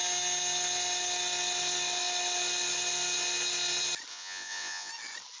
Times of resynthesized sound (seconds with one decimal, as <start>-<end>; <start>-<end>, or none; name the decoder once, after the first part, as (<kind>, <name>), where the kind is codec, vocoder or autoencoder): 4.1-4.9 (vocoder, Vocos)